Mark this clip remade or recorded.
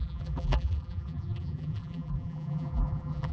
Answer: remade